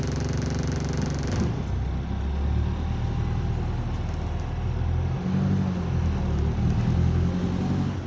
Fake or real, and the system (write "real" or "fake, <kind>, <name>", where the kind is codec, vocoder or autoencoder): real